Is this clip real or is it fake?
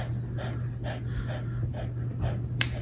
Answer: real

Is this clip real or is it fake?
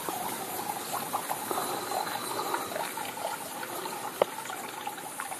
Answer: real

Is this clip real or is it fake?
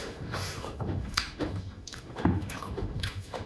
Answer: fake